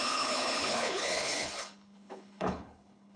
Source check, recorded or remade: remade